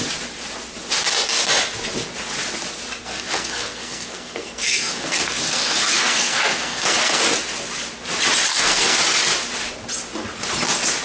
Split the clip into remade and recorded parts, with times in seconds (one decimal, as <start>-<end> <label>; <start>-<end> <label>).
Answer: 0.0-3.0 recorded; 3.0-7.2 remade; 7.2-8.5 recorded; 8.5-9.0 remade; 9.0-11.0 recorded